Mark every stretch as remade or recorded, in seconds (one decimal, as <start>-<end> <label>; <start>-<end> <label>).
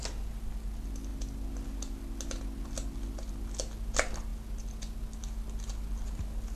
0.0-6.6 recorded